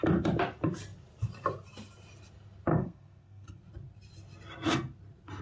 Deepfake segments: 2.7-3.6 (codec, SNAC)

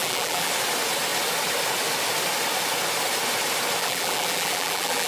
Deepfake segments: 0.0-0.5 (vocoder, BigVGAN v2); 3.8-5.1

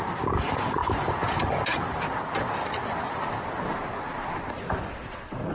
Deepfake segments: none

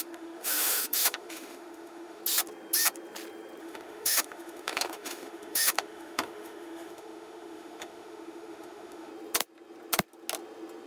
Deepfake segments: 0.0-2.2 (autoencoder, DAC-VAE); 3.6-9.1

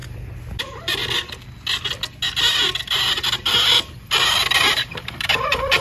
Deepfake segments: 0.6-1.0 (vocoder, BigVGAN v2); 4.5-5.8

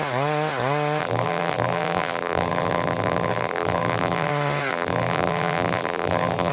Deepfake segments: 1.0-4.3 (vocoder, BigVGAN v2); 4.7-6.5

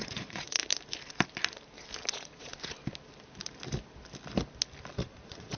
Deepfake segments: 0.0-0.6 (vocoder, Vocos); 2.1-2.5; 4.9-5.6

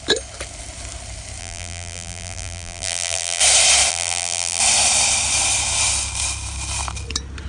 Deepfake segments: 1.4-3.4 (vocoder, BigVGAN v2); 3.9-4.6